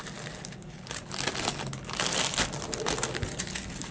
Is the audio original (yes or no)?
yes